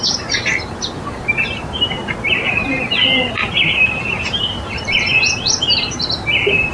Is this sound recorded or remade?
remade